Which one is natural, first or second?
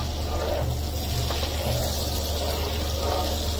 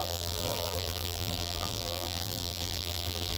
first